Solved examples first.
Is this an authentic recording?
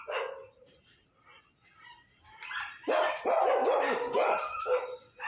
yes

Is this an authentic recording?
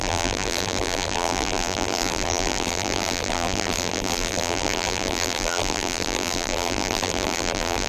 no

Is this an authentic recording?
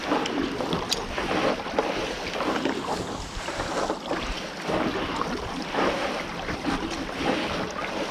yes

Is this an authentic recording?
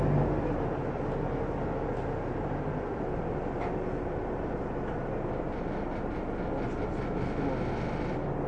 yes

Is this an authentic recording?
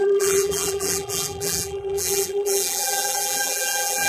no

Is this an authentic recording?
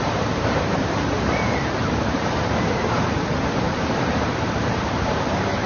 no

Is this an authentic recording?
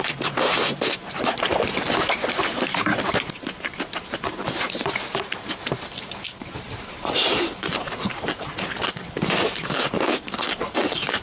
no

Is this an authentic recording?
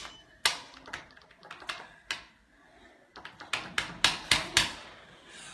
yes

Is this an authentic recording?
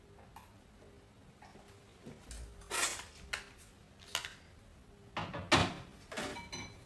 yes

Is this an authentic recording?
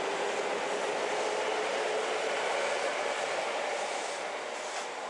yes